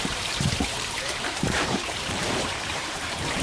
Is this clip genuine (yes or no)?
no